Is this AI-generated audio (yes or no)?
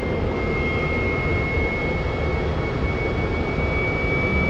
no